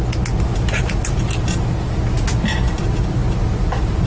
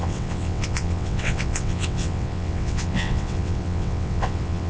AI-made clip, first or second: second